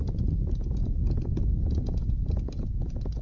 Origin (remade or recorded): recorded